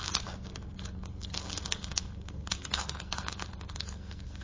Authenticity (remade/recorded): remade